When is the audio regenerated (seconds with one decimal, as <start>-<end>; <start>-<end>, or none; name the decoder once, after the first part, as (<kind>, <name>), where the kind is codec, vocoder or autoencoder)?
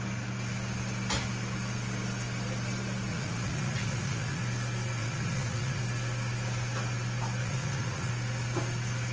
3.1-4.4 (vocoder, Vocos); 5.0-5.8; 7.4-8.1